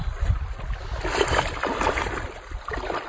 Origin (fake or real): real